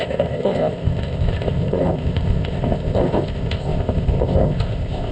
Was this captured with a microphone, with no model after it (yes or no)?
no